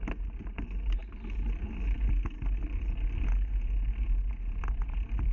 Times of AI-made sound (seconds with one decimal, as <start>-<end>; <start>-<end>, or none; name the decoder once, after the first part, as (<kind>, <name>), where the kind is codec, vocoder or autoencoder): none